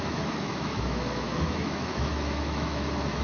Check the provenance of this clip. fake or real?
fake